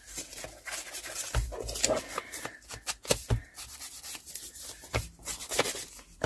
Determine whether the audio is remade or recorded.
recorded